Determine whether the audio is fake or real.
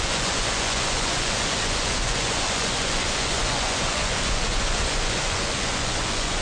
fake